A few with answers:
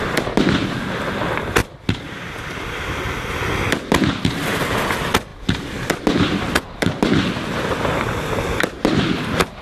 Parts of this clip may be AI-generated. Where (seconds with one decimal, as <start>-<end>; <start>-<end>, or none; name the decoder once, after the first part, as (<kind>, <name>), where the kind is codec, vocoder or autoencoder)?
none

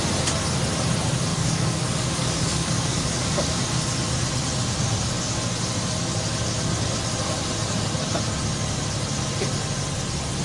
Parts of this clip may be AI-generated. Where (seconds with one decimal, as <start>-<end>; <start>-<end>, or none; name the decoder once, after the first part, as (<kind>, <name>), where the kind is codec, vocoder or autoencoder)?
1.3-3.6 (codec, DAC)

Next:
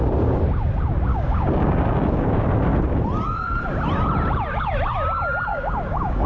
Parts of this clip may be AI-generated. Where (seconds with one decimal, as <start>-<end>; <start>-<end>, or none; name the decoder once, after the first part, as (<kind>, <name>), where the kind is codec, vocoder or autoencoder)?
1.1-2.3 (codec, DAC); 5.5-6.3